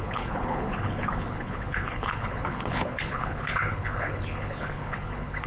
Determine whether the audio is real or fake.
fake